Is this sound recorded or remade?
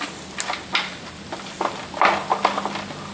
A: recorded